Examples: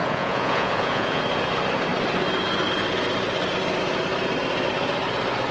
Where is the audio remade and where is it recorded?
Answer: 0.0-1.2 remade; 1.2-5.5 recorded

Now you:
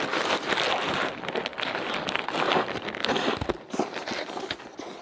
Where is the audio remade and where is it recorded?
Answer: 0.0-5.0 recorded

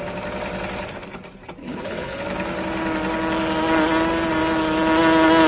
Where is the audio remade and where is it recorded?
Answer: 0.0-1.6 recorded; 1.6-2.2 remade; 2.2-5.5 recorded

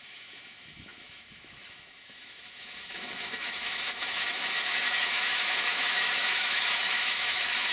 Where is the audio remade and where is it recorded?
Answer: 0.0-7.7 remade